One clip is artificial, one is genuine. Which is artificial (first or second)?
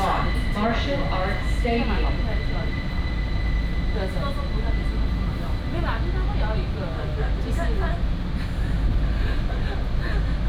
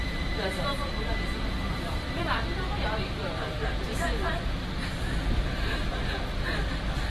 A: second